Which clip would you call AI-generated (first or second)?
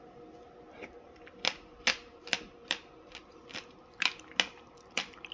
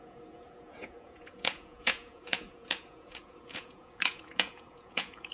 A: second